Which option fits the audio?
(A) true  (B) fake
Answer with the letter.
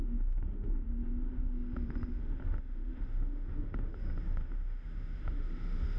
B